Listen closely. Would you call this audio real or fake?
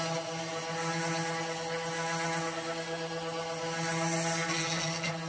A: real